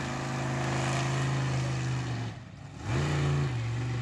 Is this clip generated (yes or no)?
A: no